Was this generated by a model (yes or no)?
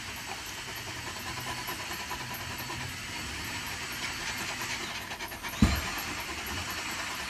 no